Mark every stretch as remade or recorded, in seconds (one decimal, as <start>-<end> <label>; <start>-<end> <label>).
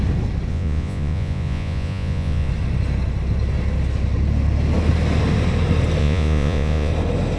0.0-0.5 recorded; 0.5-2.5 remade; 2.5-6.0 recorded; 6.0-6.9 remade; 6.9-7.4 recorded